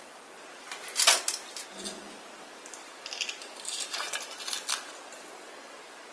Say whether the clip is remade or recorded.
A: recorded